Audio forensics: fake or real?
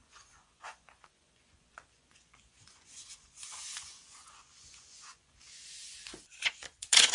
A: fake